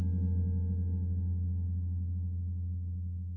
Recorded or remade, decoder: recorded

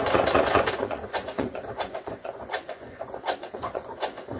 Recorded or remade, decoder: remade, vocoder, Vocos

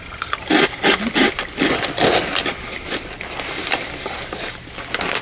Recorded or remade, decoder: recorded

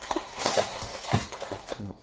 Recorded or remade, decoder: remade, codec, SNAC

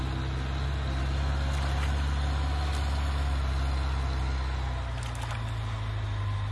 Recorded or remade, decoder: recorded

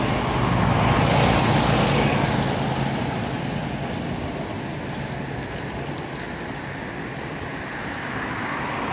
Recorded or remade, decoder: recorded